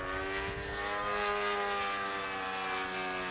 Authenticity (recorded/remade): recorded